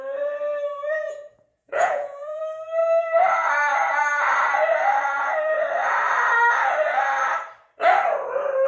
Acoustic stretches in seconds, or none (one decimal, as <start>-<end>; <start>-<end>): 0.0-0.8; 2.4-8.7

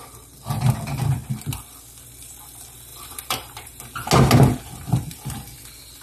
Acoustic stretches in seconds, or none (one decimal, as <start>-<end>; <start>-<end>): 0.0-2.9; 3.8-6.0